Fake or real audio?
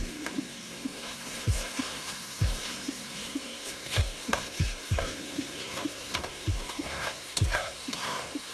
fake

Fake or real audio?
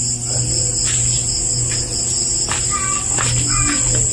real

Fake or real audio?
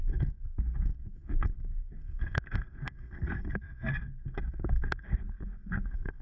fake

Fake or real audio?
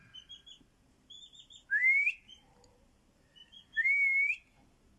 real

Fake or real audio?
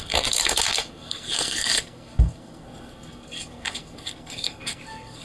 fake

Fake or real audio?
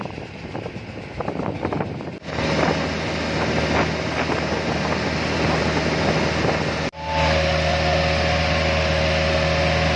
real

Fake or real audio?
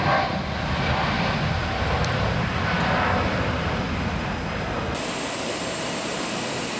real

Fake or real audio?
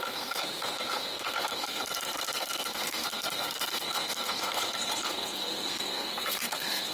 fake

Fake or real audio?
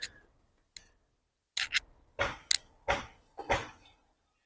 real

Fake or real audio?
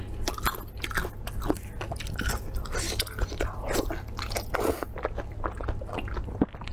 real